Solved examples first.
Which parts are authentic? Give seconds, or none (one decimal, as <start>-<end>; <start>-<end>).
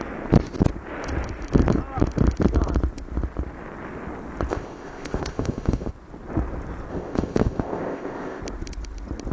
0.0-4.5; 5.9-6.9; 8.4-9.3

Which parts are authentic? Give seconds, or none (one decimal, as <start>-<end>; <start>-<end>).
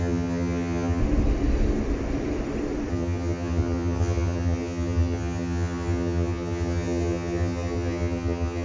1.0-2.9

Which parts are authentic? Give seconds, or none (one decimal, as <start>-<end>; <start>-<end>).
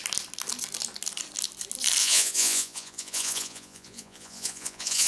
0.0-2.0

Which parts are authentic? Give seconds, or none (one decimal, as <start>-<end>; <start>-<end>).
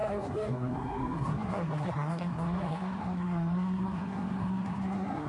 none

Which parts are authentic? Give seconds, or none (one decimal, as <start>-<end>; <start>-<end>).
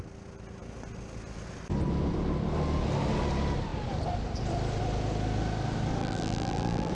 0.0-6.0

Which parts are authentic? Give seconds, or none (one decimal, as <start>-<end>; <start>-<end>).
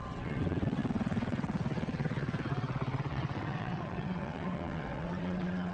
none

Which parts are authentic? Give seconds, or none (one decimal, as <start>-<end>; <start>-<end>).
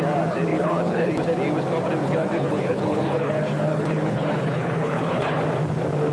0.0-0.5; 1.1-2.0; 5.4-6.1